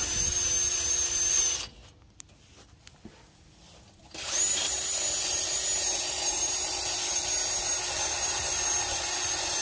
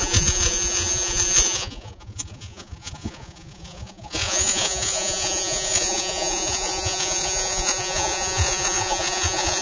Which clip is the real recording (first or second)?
first